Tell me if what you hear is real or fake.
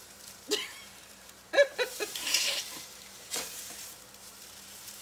fake